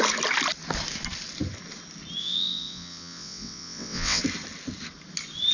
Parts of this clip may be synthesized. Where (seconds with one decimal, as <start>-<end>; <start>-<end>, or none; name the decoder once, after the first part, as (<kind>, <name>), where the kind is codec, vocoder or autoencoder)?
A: 2.2-4.2 (vocoder, WaveNeXt)